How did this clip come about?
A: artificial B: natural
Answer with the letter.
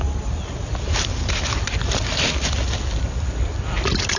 B